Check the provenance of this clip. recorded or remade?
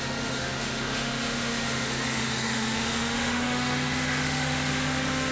remade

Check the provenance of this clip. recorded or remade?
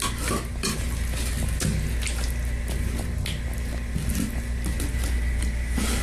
recorded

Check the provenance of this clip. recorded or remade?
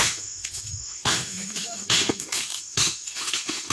remade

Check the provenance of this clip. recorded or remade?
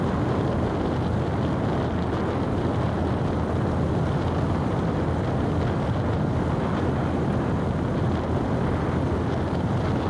recorded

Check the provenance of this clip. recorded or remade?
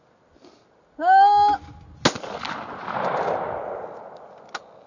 recorded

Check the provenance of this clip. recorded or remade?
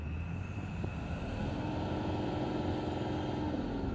recorded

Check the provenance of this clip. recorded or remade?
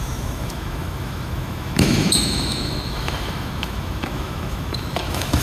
remade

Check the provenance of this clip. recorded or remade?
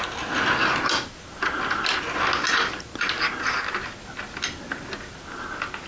recorded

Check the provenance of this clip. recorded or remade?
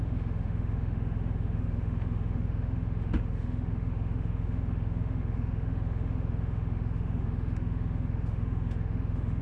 remade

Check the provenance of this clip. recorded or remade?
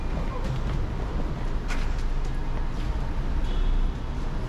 recorded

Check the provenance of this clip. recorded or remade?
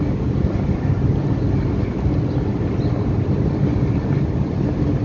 recorded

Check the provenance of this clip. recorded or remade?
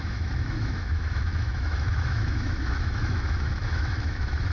remade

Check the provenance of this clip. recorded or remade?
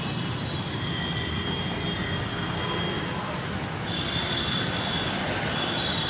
recorded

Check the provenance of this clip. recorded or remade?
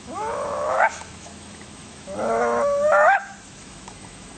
remade